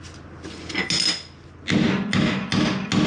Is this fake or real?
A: real